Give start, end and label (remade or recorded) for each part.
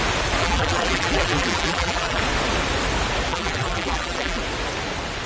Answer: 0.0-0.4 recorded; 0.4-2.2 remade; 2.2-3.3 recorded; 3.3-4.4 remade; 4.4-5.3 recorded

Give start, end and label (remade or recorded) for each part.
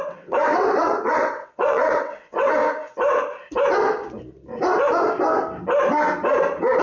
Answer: 0.0-2.6 remade; 2.6-6.8 recorded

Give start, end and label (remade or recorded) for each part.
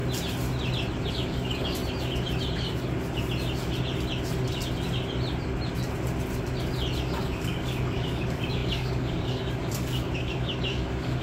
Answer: 0.0-1.1 recorded; 1.1-1.8 remade; 1.8-7.0 recorded; 7.0-11.2 remade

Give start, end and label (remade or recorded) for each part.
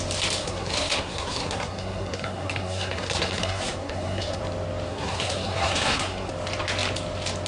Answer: 0.0-0.4 recorded; 0.4-4.4 remade; 4.4-4.9 recorded; 4.9-6.3 remade; 6.3-7.5 recorded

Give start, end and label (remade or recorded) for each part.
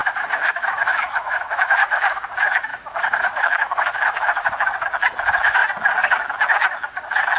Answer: 0.0-2.3 remade; 2.3-2.7 recorded; 2.7-4.5 remade; 4.5-7.4 recorded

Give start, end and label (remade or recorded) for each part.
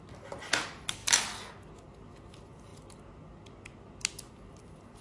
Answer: 0.0-5.0 recorded